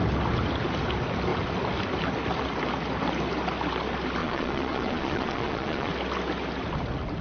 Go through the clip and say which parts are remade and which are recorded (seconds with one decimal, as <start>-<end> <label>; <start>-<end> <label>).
0.0-4.2 recorded; 4.2-5.9 remade; 5.9-7.2 recorded